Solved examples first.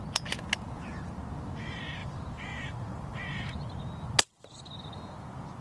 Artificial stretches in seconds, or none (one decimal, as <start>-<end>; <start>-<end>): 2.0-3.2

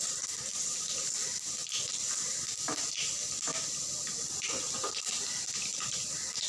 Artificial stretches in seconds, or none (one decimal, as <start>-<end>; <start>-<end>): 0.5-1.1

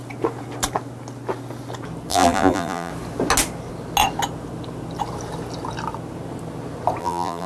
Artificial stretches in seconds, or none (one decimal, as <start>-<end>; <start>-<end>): 2.1-2.9; 7.0-7.5

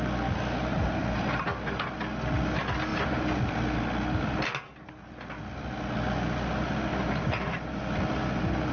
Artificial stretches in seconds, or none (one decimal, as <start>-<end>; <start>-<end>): 0.7-1.4; 2.9-3.4; 6.9-7.8